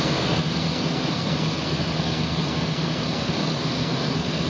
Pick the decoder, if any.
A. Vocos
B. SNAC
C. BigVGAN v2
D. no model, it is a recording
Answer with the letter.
B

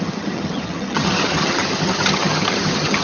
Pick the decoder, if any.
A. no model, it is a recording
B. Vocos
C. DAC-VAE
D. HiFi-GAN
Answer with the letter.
D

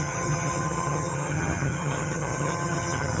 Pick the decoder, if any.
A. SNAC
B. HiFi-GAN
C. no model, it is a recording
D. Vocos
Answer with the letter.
B